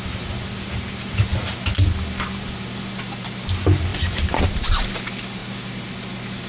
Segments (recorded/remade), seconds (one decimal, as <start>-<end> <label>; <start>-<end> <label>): 0.0-3.9 recorded; 3.9-4.4 remade; 4.4-6.5 recorded